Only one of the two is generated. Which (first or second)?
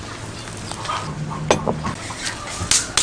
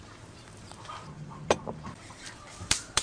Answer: second